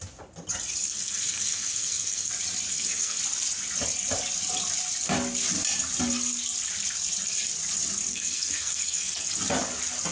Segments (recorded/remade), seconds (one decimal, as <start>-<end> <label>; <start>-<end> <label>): 0.0-0.8 recorded; 0.8-2.3 remade; 2.3-2.7 recorded; 2.7-3.2 remade; 3.2-8.1 recorded; 8.1-9.3 remade; 9.3-10.1 recorded